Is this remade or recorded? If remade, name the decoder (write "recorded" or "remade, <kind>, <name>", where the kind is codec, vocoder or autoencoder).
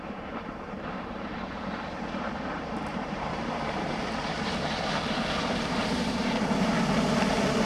remade, vocoder, BigVGAN v2